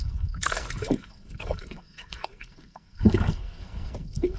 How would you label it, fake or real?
fake